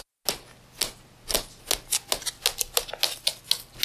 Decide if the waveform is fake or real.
real